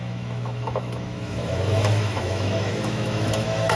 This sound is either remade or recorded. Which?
remade